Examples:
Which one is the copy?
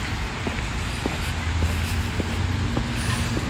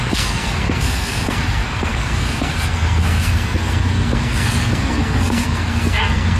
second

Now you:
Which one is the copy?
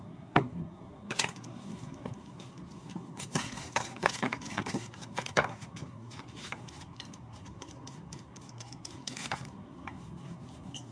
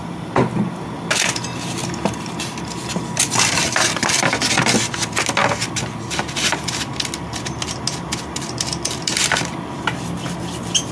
first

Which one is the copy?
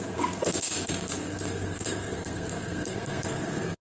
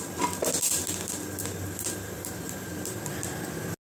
first